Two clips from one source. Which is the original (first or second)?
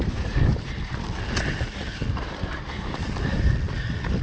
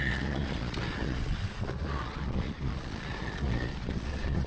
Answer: first